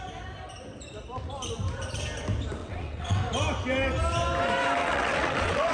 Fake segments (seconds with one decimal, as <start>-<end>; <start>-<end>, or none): 2.6-3.2; 4.8-5.7